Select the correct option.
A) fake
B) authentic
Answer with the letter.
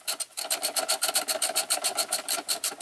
B